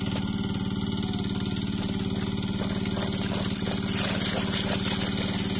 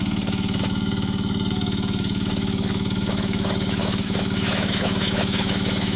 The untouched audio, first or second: first